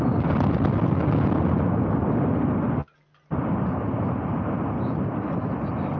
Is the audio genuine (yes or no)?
yes